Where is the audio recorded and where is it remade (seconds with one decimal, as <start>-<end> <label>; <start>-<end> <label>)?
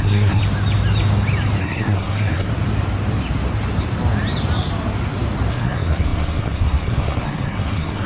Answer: 0.0-0.4 remade; 0.4-1.6 recorded; 1.6-2.5 remade; 2.5-5.5 recorded; 5.5-8.1 remade